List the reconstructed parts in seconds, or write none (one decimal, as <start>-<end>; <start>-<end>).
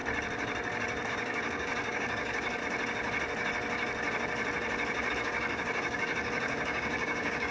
1.1-2.6; 5.1-7.5